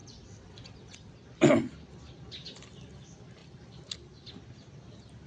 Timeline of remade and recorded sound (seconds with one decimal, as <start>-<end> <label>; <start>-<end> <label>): 0.0-1.1 remade; 1.1-5.3 recorded